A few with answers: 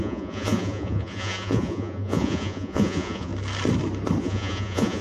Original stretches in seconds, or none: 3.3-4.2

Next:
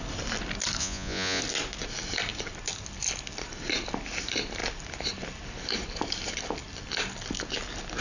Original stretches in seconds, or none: 0.0-0.8; 1.4-8.0

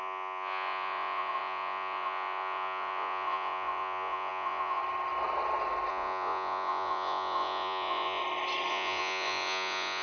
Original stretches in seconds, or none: 4.8-5.9; 8.2-8.7

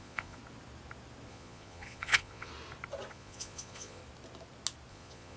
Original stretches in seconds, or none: 0.4-1.3; 2.5-3.1; 4.0-4.9

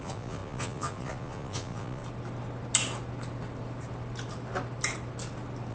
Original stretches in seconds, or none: 2.0-5.7

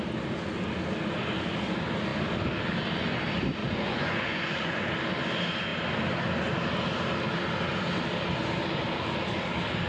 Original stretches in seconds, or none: 0.0-3.6; 4.9-9.9

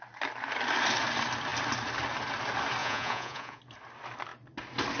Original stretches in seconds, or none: 0.0-2.8; 3.6-5.0

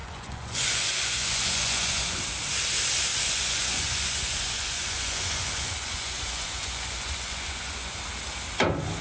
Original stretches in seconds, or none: 2.2-3.1; 8.0-9.0